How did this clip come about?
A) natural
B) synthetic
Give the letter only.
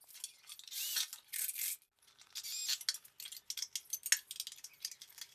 A